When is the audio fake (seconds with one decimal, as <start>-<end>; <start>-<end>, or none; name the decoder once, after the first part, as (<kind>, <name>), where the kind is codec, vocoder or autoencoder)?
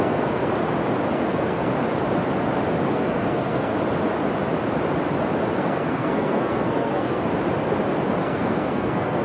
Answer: 0.0-0.5 (codec, SNAC); 1.1-1.7; 2.9-3.7; 5.5-7.2; 8.2-9.2